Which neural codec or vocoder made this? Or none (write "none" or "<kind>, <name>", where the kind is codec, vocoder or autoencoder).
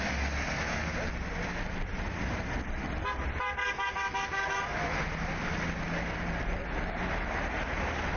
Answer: none